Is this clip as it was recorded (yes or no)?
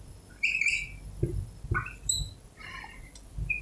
yes